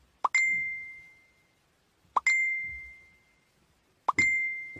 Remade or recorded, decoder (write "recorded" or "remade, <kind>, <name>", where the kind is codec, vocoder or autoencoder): recorded